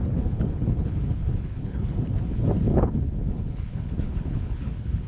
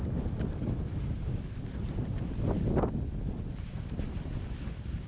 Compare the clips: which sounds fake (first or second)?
first